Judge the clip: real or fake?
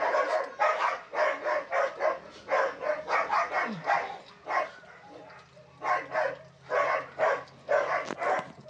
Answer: real